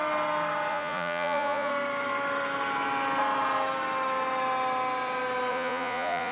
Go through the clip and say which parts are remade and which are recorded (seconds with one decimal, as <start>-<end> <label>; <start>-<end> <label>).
0.0-0.7 recorded; 0.7-1.7 remade; 1.7-5.5 recorded; 5.5-6.3 remade